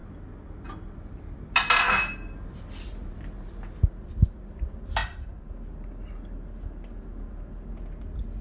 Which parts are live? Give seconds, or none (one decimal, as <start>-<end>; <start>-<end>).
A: 0.0-5.0; 5.5-8.4